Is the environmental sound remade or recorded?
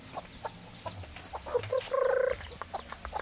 recorded